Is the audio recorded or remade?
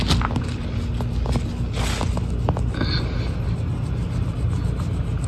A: recorded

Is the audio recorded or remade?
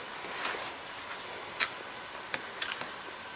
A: recorded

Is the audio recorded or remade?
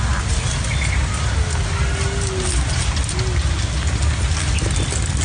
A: recorded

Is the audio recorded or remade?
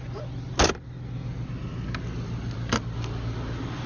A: recorded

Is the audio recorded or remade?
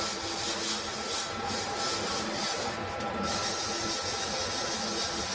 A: recorded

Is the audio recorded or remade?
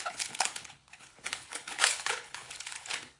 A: remade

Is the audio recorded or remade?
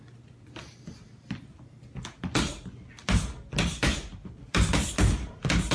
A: recorded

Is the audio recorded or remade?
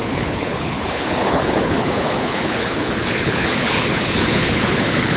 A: remade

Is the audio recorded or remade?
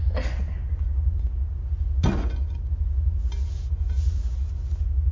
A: recorded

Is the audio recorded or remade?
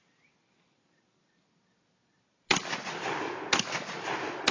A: recorded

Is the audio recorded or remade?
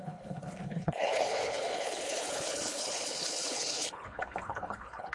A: remade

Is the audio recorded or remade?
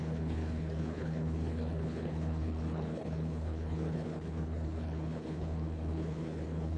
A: remade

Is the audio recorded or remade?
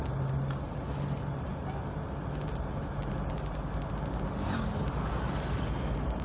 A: recorded